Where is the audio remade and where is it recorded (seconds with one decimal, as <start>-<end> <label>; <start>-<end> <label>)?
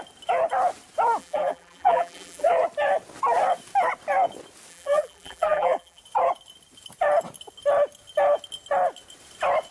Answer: 0.0-1.2 recorded; 1.2-2.5 remade; 2.5-4.7 recorded; 4.7-6.0 remade; 6.0-9.7 recorded